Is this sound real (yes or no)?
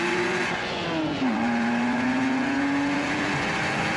no